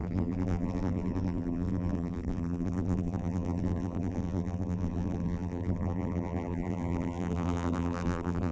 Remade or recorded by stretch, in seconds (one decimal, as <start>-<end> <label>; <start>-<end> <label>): 0.0-8.5 remade